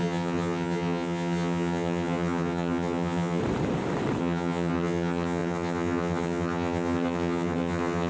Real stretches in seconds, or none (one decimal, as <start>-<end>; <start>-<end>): 3.4-4.2